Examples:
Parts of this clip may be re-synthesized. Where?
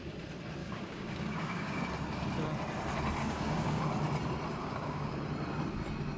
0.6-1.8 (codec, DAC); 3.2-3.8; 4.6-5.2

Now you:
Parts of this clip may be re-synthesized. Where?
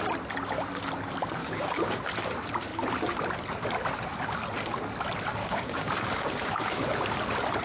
1.4-2.0 (codec, DAC); 5.4-6.9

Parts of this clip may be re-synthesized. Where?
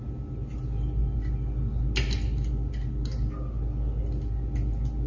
none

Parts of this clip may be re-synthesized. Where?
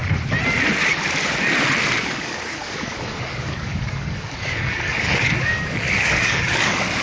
2.0-7.0 (codec, DAC)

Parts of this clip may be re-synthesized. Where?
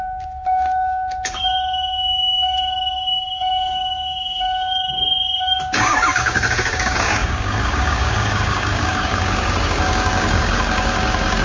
0.0-11.4 (codec, DAC)